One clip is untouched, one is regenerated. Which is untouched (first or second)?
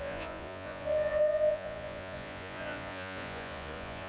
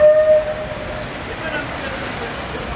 second